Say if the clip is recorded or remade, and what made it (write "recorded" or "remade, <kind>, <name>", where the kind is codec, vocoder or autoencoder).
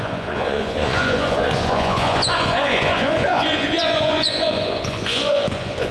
remade, vocoder, Vocos